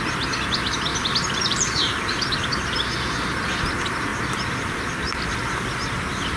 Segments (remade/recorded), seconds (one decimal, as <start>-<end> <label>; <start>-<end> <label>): 0.0-0.9 recorded; 0.9-2.2 remade; 2.2-6.4 recorded